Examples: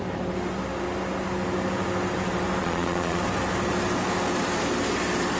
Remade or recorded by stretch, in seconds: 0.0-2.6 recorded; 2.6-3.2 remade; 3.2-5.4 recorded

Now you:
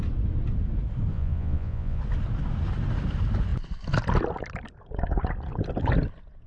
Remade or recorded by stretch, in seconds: 0.0-1.1 recorded; 1.1-2.0 remade; 2.0-6.5 recorded

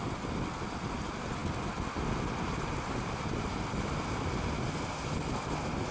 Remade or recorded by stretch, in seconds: 0.0-5.9 recorded

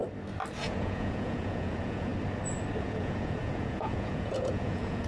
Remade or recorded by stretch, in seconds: 0.0-0.6 recorded; 0.6-2.1 remade; 2.1-2.8 recorded; 2.8-5.1 remade

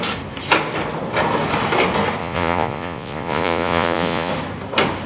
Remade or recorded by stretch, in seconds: 0.0-2.2 recorded; 2.2-4.3 remade; 4.3-5.1 recorded

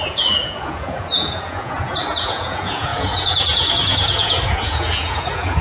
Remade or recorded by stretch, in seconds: 0.0-5.6 remade

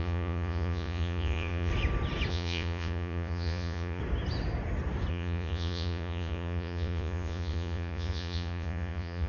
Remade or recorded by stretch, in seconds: 0.0-1.7 remade; 1.7-2.3 recorded; 2.3-4.0 remade; 4.0-5.1 recorded; 5.1-9.3 remade

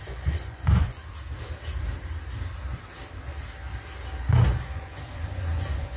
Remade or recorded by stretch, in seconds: 0.0-1.0 remade; 1.0-4.6 recorded; 4.6-6.0 remade